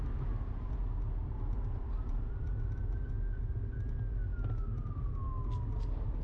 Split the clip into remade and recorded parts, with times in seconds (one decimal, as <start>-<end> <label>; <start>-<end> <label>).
0.0-1.2 recorded; 1.2-3.1 remade; 3.1-6.2 recorded